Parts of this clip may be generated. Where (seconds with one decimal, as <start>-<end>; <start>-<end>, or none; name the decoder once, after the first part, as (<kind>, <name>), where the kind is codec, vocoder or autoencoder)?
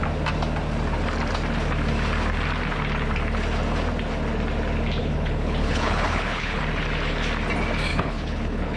5.0-6.6 (codec, HILCodec); 7.9-8.8